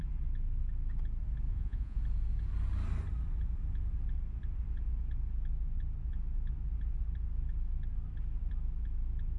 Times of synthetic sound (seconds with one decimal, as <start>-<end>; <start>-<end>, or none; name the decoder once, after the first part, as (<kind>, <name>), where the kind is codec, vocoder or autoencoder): 1.5-2.0 (vocoder, Vocos)